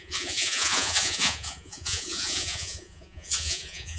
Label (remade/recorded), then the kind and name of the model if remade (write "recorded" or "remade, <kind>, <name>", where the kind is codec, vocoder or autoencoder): remade, vocoder, Vocos